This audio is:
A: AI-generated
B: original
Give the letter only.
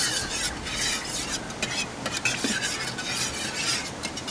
B